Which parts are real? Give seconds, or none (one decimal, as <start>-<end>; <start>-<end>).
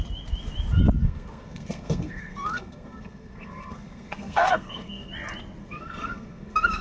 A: 0.0-1.0; 5.1-5.6